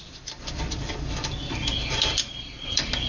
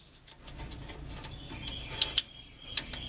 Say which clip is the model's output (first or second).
first